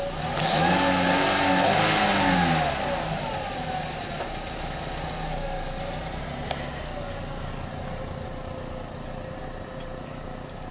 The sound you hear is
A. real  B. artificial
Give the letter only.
A